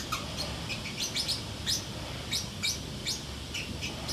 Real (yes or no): yes